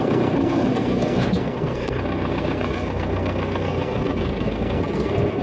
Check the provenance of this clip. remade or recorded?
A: remade